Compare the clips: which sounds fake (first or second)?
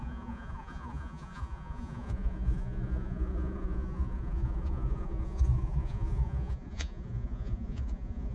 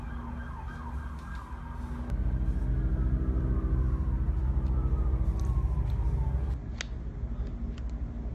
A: first